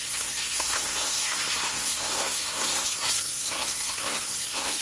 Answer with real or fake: fake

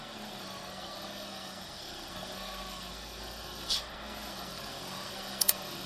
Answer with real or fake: fake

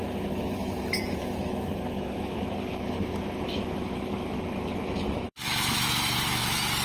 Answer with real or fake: fake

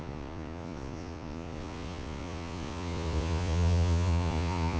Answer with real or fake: fake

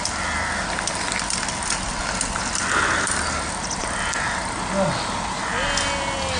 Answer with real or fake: real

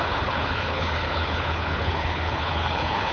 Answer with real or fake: fake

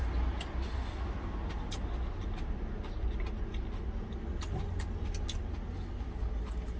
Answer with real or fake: real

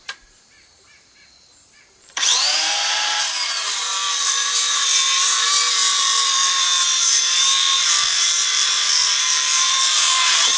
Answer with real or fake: fake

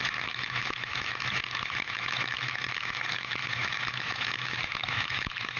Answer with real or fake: fake